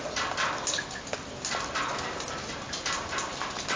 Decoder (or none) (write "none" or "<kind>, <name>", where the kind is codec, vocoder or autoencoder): none